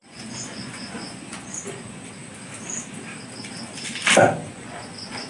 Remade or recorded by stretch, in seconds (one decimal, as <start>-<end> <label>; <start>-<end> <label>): 0.0-2.2 remade; 2.2-4.5 recorded; 4.5-5.3 remade